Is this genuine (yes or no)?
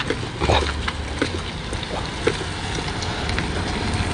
yes